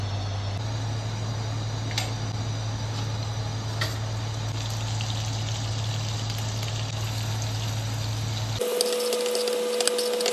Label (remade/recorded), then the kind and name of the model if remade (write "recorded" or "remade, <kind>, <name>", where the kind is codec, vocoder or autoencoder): recorded